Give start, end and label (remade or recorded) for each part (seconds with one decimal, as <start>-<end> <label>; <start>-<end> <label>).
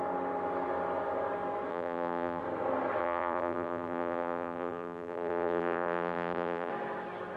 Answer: 0.0-1.7 recorded; 1.7-2.4 remade; 2.4-3.0 recorded; 3.0-6.7 remade; 6.7-7.4 recorded